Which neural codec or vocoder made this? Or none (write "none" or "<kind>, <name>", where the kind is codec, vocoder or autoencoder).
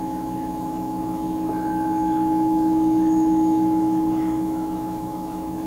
autoencoder, DAC-VAE